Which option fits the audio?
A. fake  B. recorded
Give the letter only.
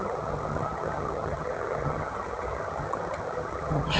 A